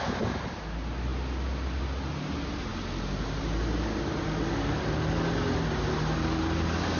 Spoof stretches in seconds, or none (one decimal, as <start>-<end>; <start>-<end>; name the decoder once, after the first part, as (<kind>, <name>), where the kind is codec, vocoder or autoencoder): none